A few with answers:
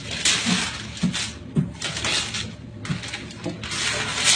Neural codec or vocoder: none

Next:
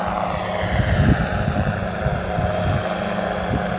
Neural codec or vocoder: none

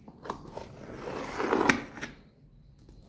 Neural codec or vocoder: vocoder, BigVGAN v2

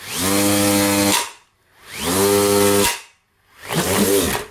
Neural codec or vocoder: none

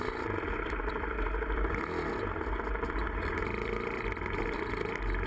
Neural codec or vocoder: vocoder, BigVGAN v2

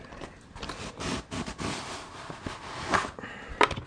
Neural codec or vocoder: none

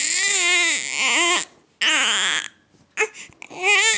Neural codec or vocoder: none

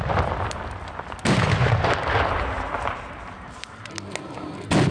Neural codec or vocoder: none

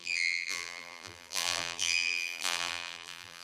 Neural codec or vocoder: vocoder, BigVGAN v2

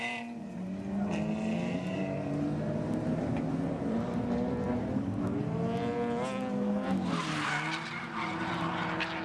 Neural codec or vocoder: none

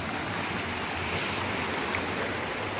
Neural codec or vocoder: none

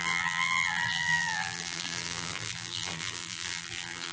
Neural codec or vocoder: vocoder, BigVGAN v2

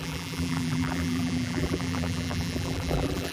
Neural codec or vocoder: vocoder, BigVGAN v2